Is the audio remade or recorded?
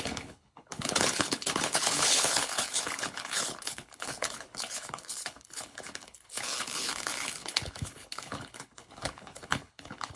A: remade